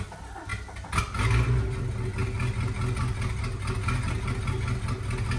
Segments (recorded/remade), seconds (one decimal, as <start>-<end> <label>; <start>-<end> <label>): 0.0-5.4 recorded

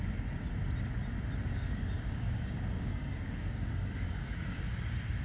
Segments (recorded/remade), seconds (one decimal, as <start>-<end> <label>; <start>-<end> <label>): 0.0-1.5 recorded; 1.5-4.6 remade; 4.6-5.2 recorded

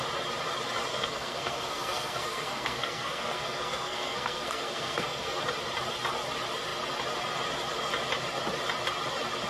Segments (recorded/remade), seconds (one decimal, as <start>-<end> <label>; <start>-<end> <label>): 0.0-0.9 recorded; 0.9-5.4 remade; 5.4-9.5 recorded

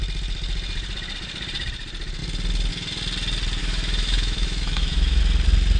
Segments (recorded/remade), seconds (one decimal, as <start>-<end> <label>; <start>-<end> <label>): 0.0-3.6 recorded; 3.6-5.2 remade; 5.2-5.8 recorded

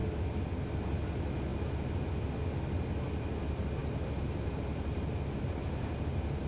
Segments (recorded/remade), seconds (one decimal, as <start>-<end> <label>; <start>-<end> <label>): 0.0-3.8 recorded; 3.8-6.5 remade

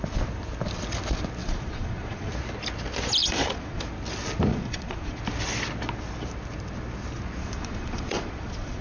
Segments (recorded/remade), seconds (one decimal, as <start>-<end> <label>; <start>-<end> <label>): 0.0-1.4 recorded; 1.4-2.3 remade; 2.3-3.2 recorded; 3.2-3.8 remade; 3.8-4.5 recorded; 4.5-5.2 remade; 5.2-7.4 recorded; 7.4-8.8 remade

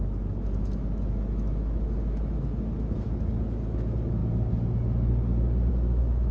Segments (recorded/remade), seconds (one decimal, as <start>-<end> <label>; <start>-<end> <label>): 0.0-4.2 remade; 4.2-5.7 recorded; 5.7-6.3 remade